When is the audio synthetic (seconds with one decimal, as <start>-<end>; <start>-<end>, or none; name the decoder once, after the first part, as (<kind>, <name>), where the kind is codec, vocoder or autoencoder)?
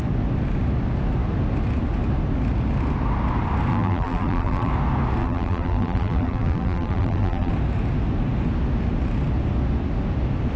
3.7-4.7 (vocoder, BigVGAN v2); 5.2-7.5